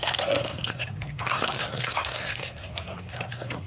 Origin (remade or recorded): remade